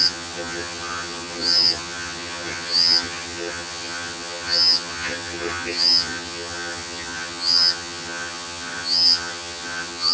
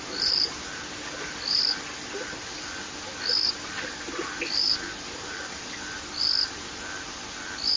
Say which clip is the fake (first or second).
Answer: first